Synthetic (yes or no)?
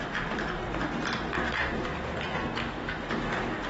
no